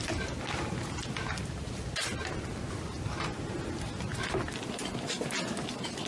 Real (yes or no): yes